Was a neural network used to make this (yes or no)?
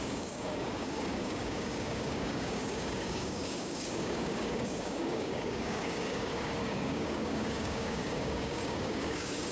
yes